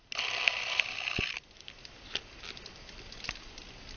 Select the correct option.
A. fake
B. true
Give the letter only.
B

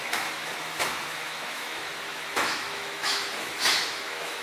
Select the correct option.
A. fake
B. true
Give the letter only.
A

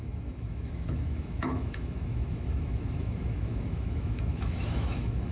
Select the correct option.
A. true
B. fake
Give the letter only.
B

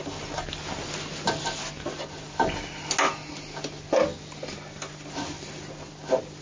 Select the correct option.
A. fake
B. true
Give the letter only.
B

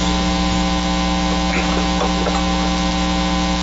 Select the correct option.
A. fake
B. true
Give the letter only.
B